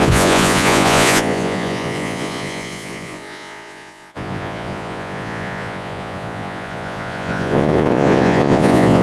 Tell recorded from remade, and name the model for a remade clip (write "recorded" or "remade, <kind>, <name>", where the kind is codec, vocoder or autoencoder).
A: remade, vocoder, Vocos